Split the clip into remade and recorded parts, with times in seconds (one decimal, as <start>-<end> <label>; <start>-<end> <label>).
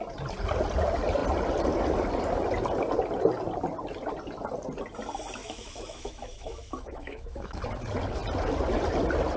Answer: 0.0-5.4 recorded; 5.4-7.6 remade; 7.6-9.4 recorded